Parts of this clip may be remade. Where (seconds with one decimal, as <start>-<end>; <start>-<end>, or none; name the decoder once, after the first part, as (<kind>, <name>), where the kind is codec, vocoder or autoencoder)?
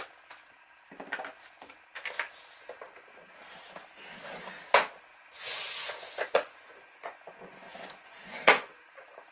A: 5.1-8.7 (vocoder, Vocos)